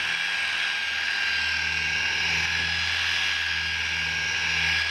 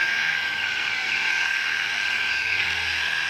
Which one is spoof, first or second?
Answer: second